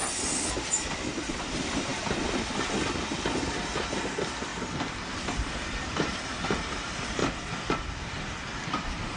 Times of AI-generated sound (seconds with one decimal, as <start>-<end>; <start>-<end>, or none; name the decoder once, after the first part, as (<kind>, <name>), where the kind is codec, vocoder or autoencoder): 0.0-4.5 (vocoder, BigVGAN v2); 5.2-7.2; 8.0-9.2